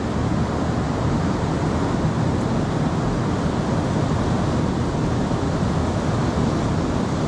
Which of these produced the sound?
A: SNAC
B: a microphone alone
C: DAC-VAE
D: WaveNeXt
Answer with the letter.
B